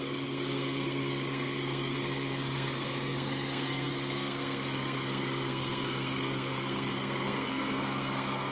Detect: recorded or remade remade